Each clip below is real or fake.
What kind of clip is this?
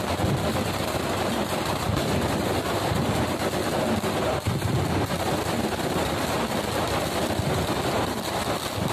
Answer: real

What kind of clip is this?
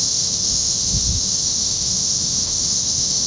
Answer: fake